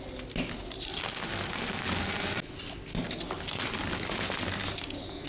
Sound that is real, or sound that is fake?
real